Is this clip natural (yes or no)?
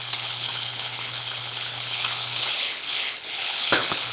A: no